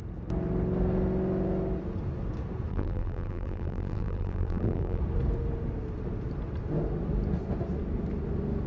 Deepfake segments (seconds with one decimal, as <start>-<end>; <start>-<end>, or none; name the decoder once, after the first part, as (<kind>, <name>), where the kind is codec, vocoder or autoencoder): 2.7-5.0 (vocoder, BigVGAN v2)

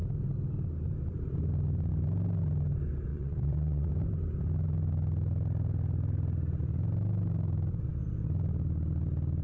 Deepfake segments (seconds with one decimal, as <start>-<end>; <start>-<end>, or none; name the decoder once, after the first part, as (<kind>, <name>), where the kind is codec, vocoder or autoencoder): 3.1-3.9 (vocoder, WaveNeXt)

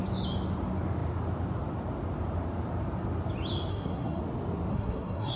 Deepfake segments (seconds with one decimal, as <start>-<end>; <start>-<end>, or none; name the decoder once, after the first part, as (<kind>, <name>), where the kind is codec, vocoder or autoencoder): 3.7-4.2 (codec, SNAC); 4.7-5.4

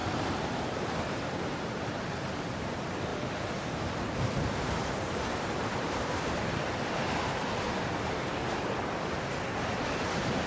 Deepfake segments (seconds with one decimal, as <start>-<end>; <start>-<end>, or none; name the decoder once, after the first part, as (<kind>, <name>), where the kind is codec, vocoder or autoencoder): 0.0-2.7 (vocoder, BigVGAN v2); 3.1-6.6

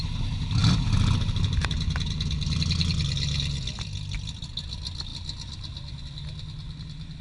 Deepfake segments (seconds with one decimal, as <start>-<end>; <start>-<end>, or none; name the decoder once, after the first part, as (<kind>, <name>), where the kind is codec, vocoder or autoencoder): none

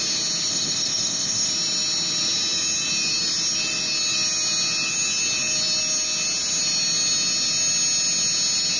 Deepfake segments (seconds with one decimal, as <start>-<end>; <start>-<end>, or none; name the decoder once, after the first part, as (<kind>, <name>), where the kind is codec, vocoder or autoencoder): 0.5-1.5 (codec, ZipCodec)

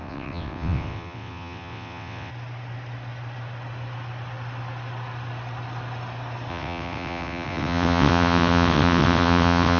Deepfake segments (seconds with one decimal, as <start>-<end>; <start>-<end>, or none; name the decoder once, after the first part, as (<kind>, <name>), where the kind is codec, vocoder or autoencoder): 0.0-2.3 (vocoder, WaveNeXt); 6.5-9.8

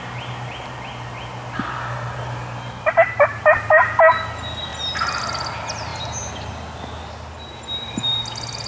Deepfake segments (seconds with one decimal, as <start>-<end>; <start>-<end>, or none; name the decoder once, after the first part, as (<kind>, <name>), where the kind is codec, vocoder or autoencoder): 4.7-5.2 (vocoder, BigVGAN v2); 5.9-6.5